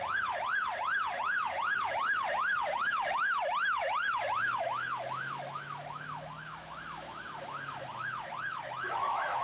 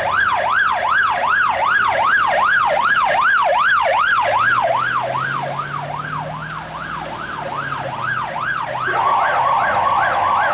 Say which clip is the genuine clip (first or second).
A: second